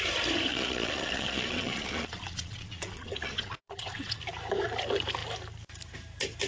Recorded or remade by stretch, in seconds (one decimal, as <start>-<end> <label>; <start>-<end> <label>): 0.0-0.5 recorded; 0.5-4.2 remade; 4.2-6.5 recorded